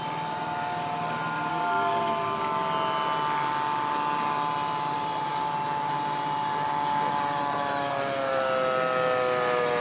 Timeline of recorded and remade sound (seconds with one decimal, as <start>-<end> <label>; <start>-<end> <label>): 0.0-1.5 recorded; 1.5-2.4 remade; 2.4-9.8 recorded